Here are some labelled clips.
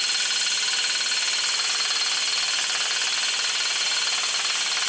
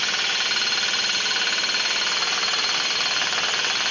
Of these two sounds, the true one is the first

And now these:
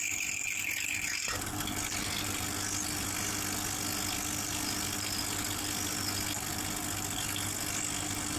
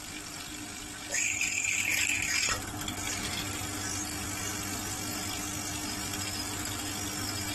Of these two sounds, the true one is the first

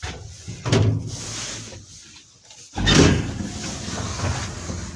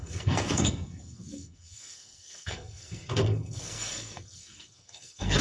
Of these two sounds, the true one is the first